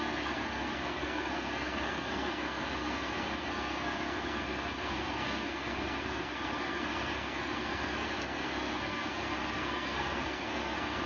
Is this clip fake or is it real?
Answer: fake